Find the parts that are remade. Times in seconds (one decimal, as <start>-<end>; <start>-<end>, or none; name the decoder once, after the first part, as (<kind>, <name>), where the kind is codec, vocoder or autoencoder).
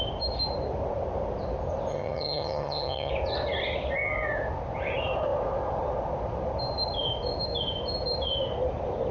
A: 1.9-3.1 (vocoder, HiFi-GAN)